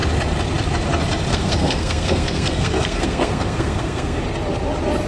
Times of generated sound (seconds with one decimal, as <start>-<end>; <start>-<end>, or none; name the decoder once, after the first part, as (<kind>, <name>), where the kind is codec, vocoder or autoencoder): 1.3-4.2 (codec, SNAC)